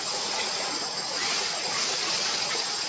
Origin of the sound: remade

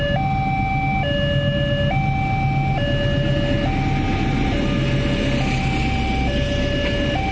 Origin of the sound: recorded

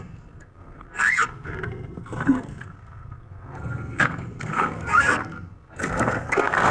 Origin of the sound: remade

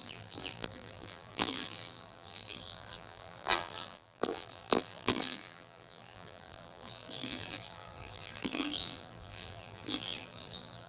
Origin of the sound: remade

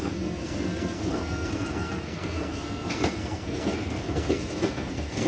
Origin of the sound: remade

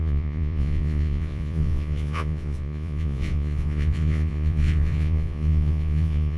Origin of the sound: remade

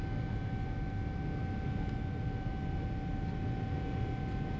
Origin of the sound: recorded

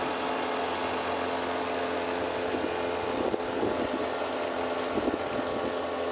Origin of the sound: recorded